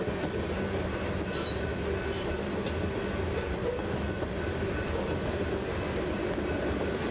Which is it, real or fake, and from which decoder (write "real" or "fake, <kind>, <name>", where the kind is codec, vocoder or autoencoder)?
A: real